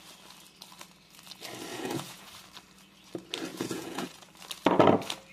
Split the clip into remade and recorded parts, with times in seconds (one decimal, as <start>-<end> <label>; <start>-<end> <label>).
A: 0.0-1.7 recorded; 1.7-2.3 remade; 2.3-3.5 recorded; 3.5-4.3 remade; 4.3-5.3 recorded